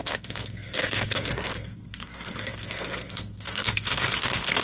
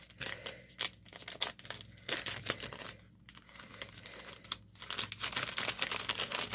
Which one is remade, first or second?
first